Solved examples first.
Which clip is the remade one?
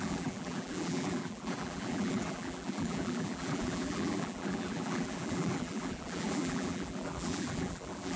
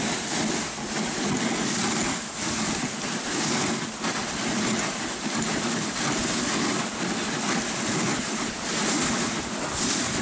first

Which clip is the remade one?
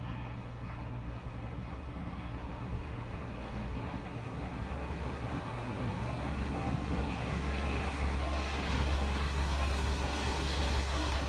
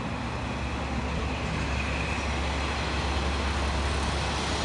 first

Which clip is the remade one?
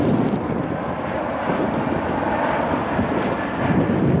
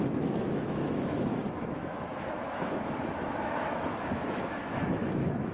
second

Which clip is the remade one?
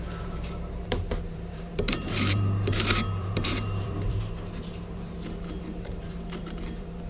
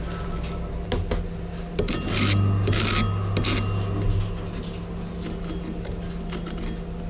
first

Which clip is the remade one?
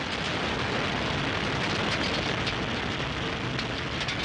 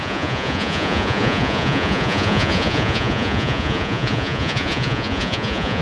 second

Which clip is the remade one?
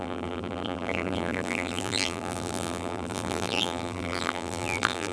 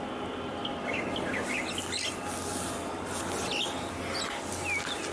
first